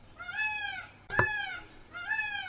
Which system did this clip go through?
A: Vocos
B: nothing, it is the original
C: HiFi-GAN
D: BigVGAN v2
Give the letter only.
B